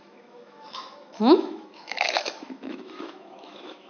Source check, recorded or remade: remade